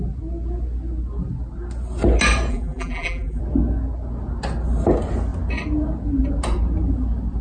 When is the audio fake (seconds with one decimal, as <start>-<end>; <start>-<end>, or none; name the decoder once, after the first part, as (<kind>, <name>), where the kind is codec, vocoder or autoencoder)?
2.5-3.4 (vocoder, BigVGAN v2)